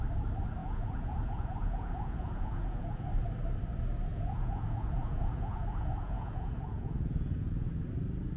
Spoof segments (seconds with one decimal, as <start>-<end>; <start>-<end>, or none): 0.6-3.1; 4.1-7.8